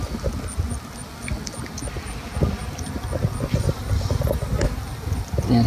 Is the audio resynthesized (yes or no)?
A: no